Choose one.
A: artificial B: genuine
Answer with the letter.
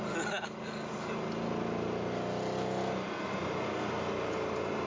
B